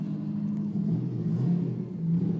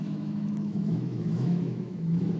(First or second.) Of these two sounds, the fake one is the second